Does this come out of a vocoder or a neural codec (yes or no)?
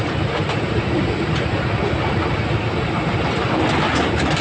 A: yes